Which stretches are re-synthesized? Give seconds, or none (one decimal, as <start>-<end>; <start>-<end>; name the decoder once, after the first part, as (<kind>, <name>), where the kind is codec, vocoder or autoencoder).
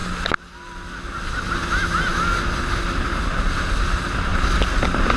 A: none